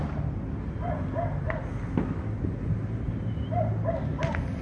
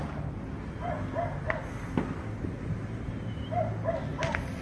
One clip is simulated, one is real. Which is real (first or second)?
second